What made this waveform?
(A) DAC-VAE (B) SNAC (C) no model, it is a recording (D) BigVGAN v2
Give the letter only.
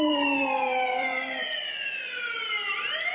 D